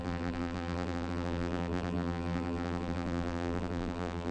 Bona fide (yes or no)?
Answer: no